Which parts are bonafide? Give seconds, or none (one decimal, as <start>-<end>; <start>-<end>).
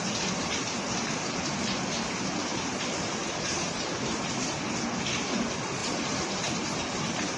0.0-2.5; 3.9-5.8; 6.3-7.4